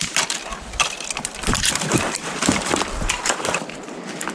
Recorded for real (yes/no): no